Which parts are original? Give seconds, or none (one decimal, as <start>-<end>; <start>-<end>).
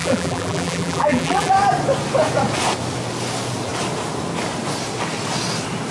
1.5-5.9